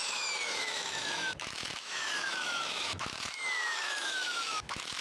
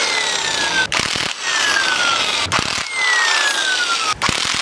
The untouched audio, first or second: second